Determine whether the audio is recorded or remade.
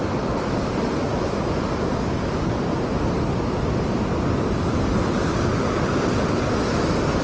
recorded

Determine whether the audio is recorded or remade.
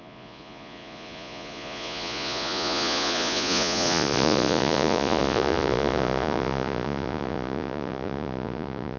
remade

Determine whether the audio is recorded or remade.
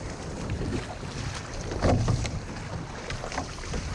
remade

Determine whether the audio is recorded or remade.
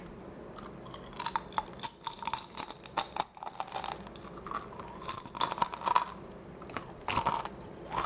recorded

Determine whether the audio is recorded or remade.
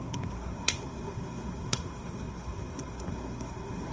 remade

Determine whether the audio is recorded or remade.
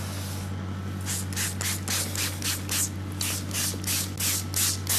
recorded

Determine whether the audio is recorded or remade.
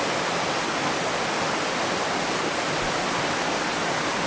recorded